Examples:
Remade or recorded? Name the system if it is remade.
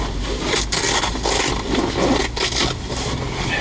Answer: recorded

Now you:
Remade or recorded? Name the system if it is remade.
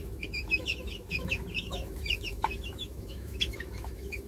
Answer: remade, autoencoder, DAC-VAE